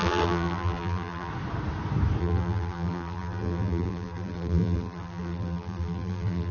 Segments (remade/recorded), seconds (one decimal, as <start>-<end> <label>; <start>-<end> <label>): 0.0-1.3 remade; 1.3-2.2 recorded; 2.2-6.5 remade